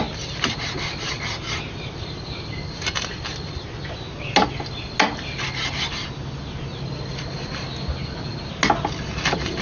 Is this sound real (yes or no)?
yes